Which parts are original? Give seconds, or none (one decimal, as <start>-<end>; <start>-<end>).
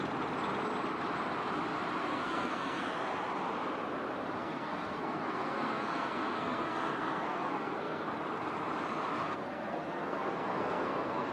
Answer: 0.0-2.0; 2.9-4.4; 8.1-9.2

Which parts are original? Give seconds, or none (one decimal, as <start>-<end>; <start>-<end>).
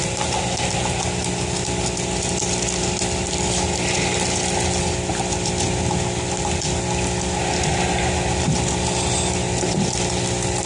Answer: 0.0-10.7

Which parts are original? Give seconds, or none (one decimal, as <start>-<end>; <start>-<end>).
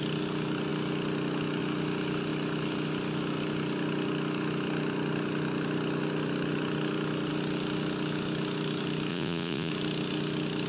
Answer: 0.0-9.1; 9.7-10.7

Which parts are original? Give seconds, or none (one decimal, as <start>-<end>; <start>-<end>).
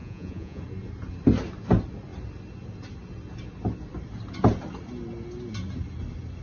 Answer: 0.6-6.4